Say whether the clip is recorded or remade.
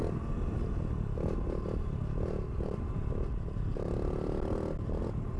recorded